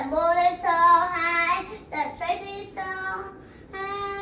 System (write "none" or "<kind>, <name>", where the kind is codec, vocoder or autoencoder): none